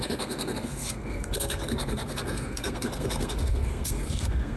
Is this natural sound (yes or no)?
no